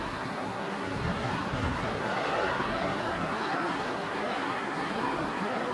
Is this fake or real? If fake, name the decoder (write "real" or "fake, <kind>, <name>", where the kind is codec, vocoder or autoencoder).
fake, codec, SNAC